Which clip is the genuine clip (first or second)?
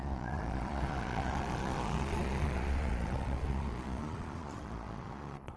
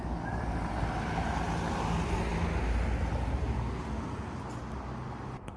second